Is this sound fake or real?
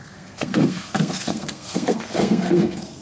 fake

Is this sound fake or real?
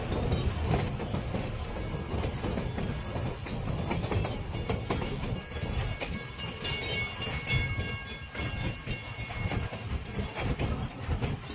real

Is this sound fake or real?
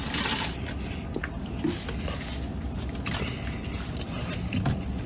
real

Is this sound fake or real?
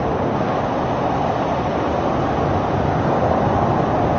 real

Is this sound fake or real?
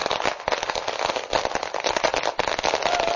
real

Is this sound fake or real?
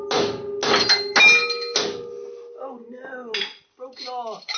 real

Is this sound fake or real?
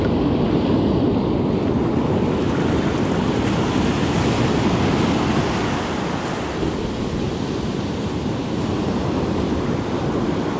real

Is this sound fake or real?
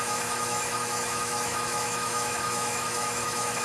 fake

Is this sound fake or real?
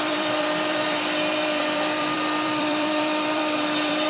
fake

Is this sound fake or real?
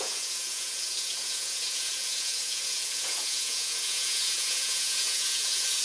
fake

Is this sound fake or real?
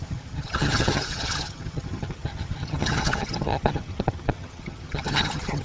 fake